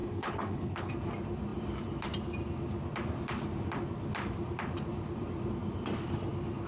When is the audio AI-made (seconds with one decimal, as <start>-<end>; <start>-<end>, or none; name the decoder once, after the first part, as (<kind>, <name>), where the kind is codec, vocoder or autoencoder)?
0.0-0.9 (codec, HILCodec)